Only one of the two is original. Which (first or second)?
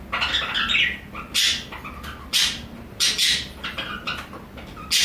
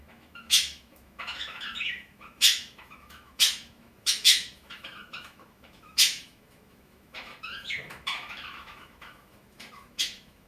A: first